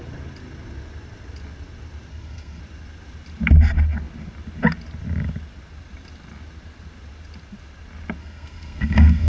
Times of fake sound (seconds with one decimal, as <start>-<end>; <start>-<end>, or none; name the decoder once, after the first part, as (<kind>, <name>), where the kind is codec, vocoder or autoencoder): 2.1-2.6 (codec, SNAC); 8.2-9.3

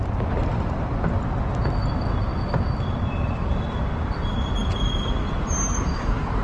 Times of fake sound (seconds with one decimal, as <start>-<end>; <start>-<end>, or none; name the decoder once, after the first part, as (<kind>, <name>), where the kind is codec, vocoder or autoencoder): none

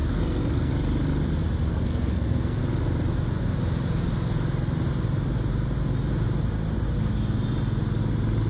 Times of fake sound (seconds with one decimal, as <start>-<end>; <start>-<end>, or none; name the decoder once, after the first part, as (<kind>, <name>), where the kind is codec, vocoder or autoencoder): 0.0-0.7 (codec, SNAC); 1.7-2.6

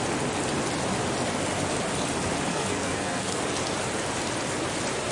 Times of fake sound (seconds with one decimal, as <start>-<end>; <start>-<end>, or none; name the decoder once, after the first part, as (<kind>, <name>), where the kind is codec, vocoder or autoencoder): 2.5-3.4 (codec, SNAC)

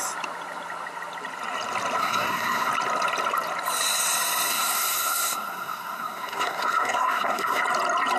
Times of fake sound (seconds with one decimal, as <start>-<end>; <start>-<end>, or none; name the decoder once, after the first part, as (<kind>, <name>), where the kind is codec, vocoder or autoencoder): 2.0-2.7 (codec, SNAC); 4.5-7.6

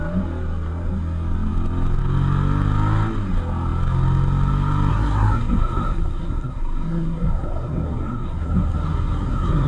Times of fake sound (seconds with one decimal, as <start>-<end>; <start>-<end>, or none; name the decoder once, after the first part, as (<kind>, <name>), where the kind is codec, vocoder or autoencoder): 4.9-9.7 (codec, SNAC)

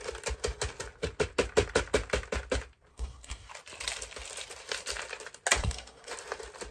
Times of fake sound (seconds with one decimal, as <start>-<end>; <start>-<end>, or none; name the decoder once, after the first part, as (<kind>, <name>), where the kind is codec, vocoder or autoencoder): 2.9-3.5 (codec, SNAC); 5.6-6.1

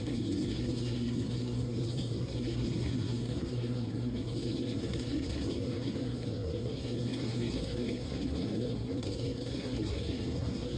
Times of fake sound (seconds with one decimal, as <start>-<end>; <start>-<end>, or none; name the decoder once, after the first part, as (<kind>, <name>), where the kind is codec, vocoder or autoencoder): 0.0-10.8 (codec, SNAC)